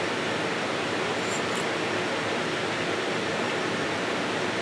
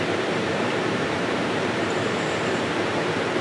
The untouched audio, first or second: first